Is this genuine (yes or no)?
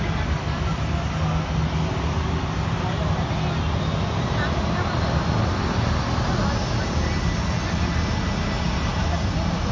yes